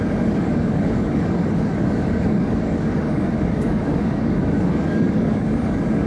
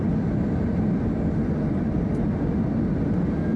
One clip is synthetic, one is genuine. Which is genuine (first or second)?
second